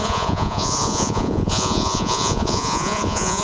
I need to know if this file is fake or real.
fake